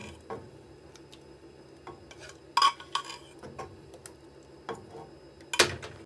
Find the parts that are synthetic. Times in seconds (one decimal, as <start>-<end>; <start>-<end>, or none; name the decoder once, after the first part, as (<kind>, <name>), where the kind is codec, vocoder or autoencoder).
3.6-4.0 (vocoder, BigVGAN v2)